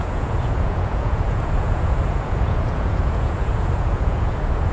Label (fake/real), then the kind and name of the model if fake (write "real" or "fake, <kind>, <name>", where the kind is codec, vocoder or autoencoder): fake, vocoder, Vocos